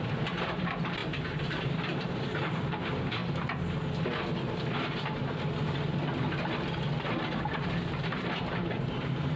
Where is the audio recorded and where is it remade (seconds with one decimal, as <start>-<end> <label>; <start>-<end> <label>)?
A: 0.0-3.2 remade; 3.2-4.8 recorded; 4.8-5.2 remade; 5.2-7.4 recorded; 7.4-9.4 remade